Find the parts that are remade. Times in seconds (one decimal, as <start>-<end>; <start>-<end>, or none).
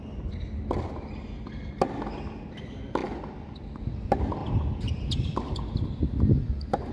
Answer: none